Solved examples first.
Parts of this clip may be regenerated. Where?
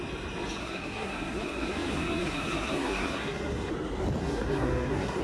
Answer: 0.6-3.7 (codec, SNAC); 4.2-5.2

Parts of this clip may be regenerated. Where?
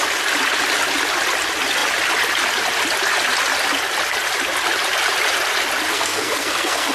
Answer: 5.9-6.9 (codec, SNAC)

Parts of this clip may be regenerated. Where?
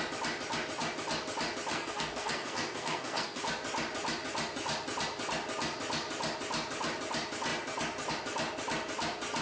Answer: 1.7-3.4 (codec, SNAC)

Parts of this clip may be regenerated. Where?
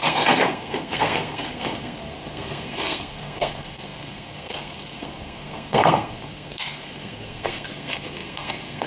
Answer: 0.0-8.9 (codec, SNAC)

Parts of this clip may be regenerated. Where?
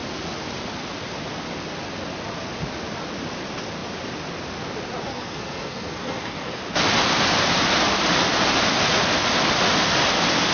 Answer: 5.1-6.6 (codec, SNAC)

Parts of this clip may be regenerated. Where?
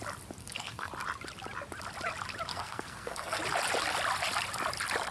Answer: 0.4-0.9 (codec, SNAC); 2.5-3.4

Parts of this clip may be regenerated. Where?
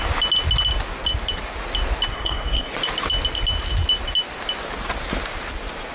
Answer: 2.1-2.7 (codec, SNAC)